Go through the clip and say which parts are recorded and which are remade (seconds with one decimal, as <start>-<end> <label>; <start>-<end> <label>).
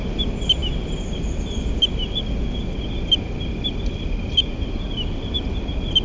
0.0-6.0 recorded